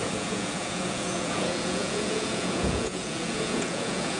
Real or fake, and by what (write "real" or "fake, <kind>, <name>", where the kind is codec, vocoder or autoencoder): fake, vocoder, Vocos